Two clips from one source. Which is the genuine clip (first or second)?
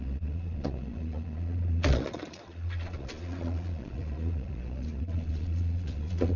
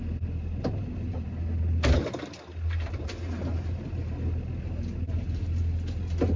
second